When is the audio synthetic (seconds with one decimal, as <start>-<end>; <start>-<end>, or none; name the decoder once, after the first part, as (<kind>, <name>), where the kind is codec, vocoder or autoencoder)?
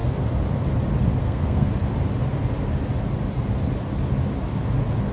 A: 1.2-1.7 (codec, SNAC)